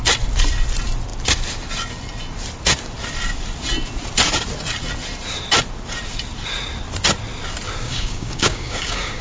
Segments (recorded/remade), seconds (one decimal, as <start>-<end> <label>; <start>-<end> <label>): 0.0-7.8 recorded; 7.8-9.2 remade